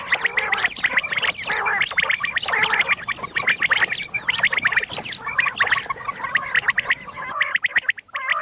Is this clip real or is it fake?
real